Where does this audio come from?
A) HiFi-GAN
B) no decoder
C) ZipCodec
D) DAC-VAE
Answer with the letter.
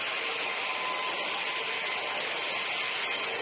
B